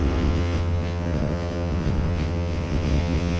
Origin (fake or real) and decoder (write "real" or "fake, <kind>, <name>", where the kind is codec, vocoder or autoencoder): fake, vocoder, WaveNeXt